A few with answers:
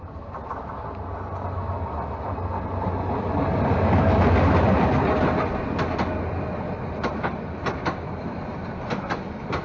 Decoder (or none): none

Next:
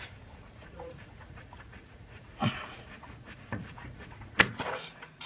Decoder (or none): vocoder, Vocos